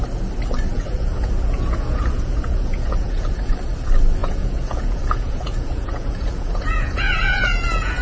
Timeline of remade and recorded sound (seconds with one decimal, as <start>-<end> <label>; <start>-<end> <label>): 0.0-0.7 recorded; 0.7-3.5 remade; 3.5-4.2 recorded; 4.2-8.0 remade